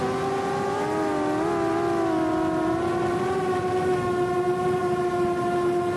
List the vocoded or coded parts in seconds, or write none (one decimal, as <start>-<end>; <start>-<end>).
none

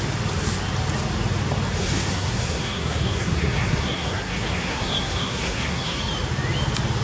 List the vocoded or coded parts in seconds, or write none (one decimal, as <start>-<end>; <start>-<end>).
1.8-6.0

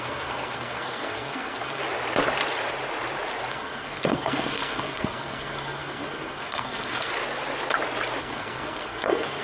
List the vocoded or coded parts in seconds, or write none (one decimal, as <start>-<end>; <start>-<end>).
0.0-1.8; 3.5-7.1; 8.2-9.4

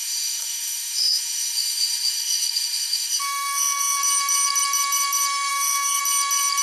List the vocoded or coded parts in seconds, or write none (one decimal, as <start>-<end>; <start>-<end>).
0.0-4.0; 5.5-6.0

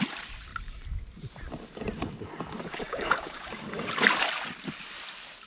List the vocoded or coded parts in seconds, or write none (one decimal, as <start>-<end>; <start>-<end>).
2.7-3.9